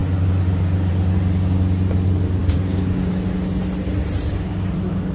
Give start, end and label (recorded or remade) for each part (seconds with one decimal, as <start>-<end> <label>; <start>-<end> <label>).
0.0-2.4 recorded; 2.4-3.1 remade; 3.1-5.1 recorded